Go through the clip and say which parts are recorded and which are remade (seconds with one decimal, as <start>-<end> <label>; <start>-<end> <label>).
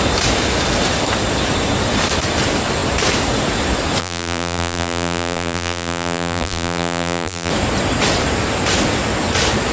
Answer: 0.0-4.0 recorded; 4.0-7.5 remade; 7.5-9.7 recorded